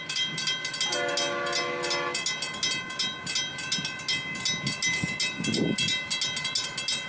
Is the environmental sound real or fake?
real